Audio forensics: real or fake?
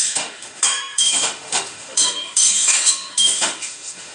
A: fake